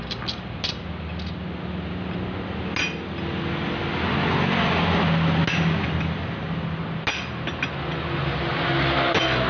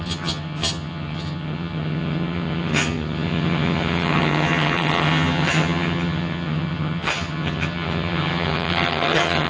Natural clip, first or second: first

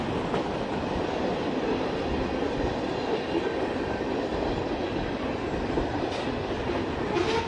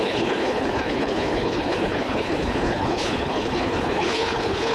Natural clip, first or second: first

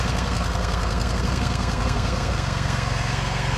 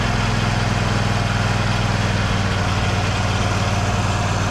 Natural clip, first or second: second